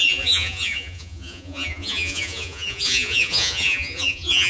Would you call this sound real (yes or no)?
no